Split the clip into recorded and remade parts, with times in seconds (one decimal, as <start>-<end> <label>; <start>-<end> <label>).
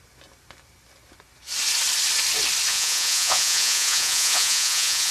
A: 0.0-2.7 recorded; 2.7-5.1 remade